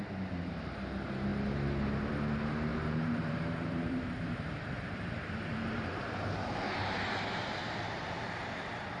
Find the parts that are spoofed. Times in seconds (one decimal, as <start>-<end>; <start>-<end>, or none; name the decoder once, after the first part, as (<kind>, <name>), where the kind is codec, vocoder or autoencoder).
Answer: 2.7-6.3 (vocoder, BigVGAN v2); 6.8-7.3